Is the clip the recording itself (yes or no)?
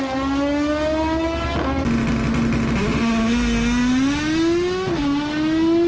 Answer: yes